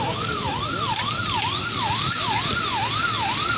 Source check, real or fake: real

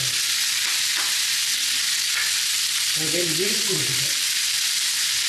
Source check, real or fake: real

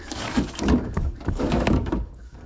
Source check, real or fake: fake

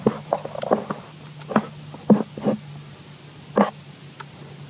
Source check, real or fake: real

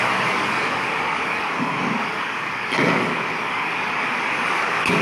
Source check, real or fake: fake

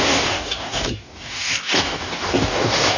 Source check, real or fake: fake